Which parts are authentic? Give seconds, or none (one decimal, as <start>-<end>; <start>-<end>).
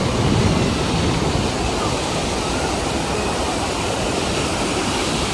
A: 2.2-3.8